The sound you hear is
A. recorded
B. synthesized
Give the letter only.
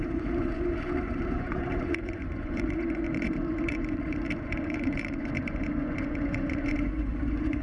B